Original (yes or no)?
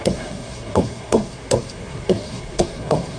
no